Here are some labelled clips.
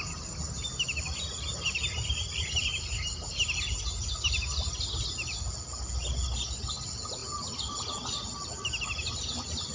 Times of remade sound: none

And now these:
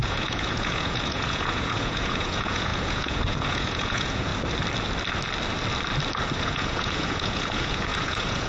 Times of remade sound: 0.0-4.3 (vocoder, Vocos); 6.4-8.5

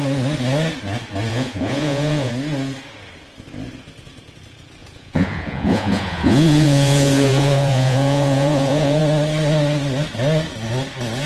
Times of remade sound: 1.3-2.3 (vocoder, Vocos); 4.8-9.0

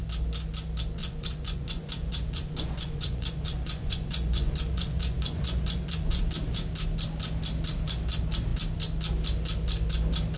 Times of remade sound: 1.0-6.2 (vocoder, Vocos)

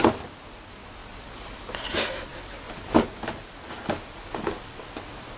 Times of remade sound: none

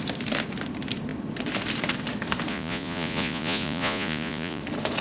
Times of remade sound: 2.5-4.6 (vocoder, Vocos)

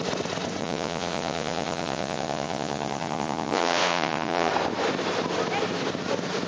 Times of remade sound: 0.6-4.5 (vocoder, Vocos)